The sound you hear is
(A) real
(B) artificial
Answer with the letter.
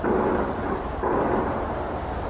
A